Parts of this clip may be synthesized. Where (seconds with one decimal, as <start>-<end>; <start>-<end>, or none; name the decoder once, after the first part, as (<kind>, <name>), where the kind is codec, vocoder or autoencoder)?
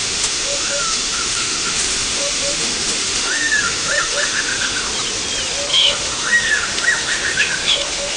0.0-4.9 (autoencoder, DAC-VAE); 5.7-8.2